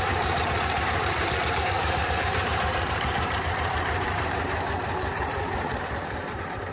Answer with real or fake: fake